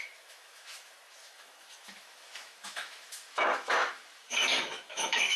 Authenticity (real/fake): fake